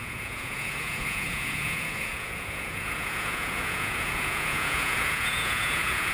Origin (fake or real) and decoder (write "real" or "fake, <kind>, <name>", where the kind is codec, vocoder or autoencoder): fake, vocoder, Vocos